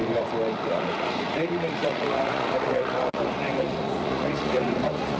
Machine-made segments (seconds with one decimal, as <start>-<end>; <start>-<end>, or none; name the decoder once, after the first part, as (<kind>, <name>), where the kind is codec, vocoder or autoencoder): 0.7-5.2 (vocoder, Vocos)